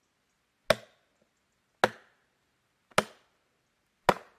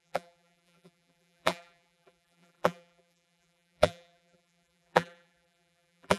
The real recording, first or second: first